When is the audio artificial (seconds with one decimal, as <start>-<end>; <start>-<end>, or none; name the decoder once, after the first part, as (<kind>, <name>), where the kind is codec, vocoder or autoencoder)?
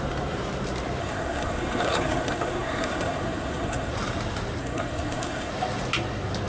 1.0-3.9 (codec, SNAC); 4.6-5.5